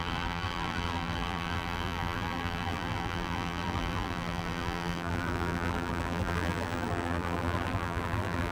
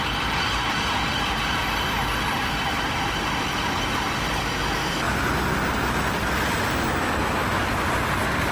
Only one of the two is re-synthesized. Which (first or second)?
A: first